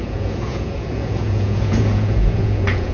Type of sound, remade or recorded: remade